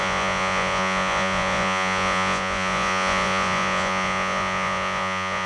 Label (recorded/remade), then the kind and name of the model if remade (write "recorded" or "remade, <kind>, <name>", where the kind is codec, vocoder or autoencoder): remade, vocoder, Vocos